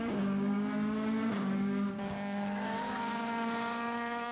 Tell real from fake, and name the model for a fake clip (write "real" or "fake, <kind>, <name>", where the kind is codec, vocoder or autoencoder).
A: fake, codec, DAC